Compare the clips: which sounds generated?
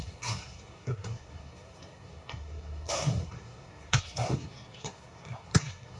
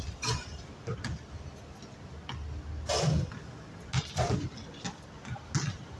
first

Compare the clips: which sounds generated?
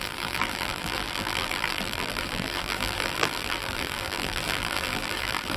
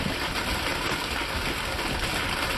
first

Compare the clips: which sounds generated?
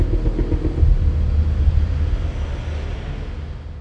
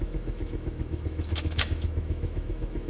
second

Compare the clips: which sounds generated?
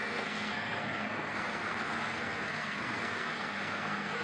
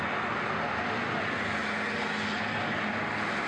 first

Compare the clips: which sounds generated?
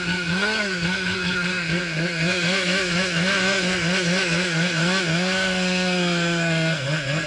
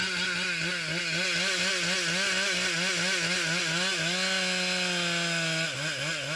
first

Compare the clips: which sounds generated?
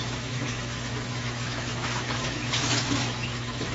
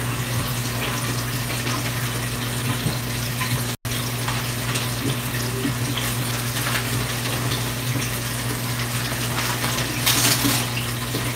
first